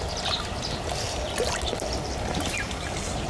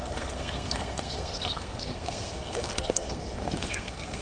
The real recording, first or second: first